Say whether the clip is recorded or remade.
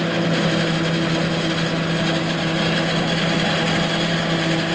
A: recorded